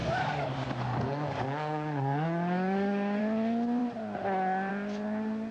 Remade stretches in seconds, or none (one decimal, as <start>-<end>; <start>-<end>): 0.0-3.2